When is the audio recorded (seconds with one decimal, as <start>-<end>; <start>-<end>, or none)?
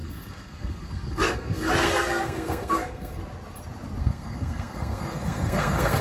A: 3.2-4.0